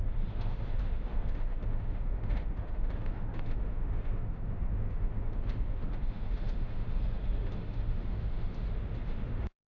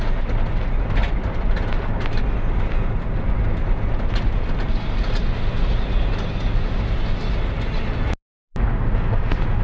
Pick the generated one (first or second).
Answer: first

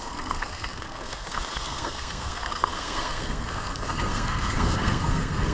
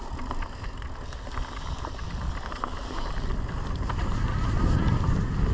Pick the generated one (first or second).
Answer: first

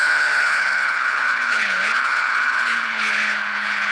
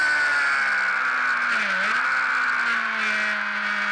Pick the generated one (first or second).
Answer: first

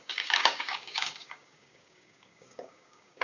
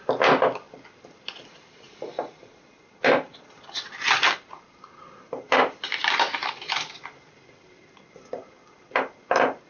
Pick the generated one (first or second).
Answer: first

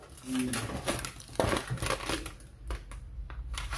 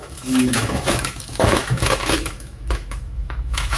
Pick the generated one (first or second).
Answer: second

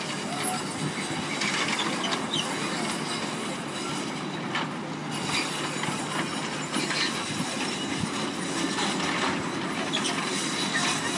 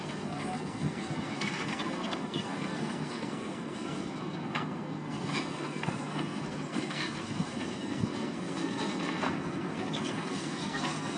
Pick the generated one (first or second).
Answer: second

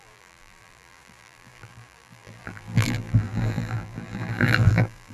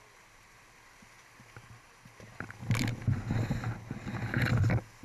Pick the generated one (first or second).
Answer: first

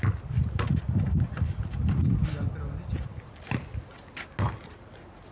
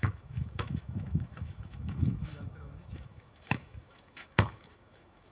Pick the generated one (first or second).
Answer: second